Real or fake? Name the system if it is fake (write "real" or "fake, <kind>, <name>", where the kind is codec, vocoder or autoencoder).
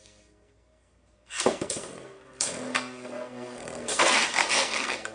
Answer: fake, codec, SNAC